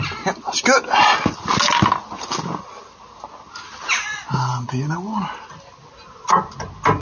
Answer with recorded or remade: recorded